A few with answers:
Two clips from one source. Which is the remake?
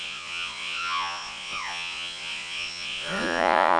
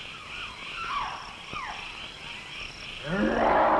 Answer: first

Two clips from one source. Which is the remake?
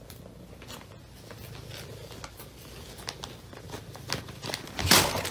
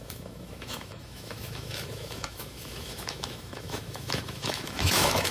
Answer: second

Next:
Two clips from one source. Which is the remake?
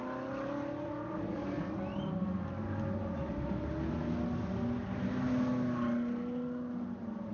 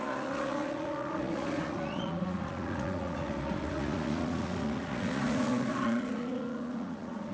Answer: second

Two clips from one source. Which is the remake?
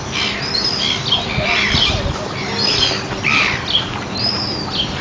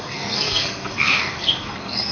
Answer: second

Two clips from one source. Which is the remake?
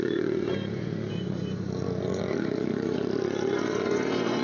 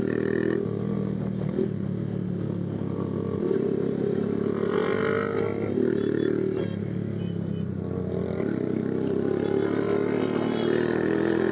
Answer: first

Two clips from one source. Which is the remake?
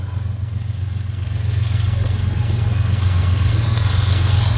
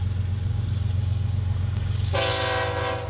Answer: first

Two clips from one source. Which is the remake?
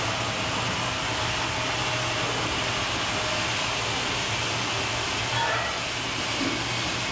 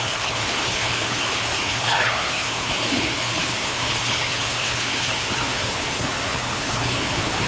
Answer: second